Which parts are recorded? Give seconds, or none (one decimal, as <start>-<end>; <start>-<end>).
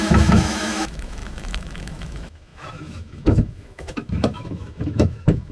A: none